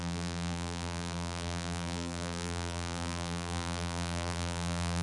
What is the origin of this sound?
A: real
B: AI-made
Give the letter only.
B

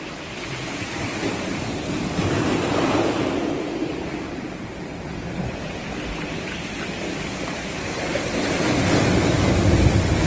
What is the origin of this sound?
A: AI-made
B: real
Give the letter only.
B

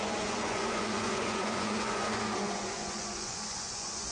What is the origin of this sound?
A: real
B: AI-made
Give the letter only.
B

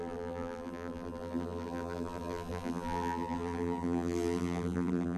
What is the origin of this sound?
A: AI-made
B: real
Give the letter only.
A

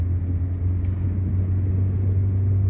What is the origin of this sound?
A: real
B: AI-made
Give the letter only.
A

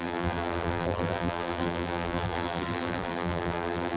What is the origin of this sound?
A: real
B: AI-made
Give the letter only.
B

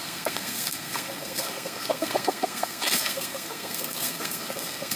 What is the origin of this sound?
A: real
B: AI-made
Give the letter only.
B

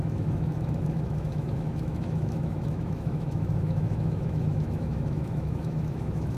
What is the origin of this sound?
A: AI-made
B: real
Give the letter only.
A